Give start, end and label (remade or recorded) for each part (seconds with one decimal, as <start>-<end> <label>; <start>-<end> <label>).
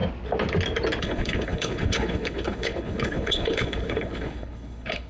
0.0-1.0 recorded; 1.0-5.1 remade